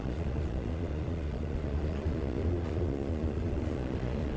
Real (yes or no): no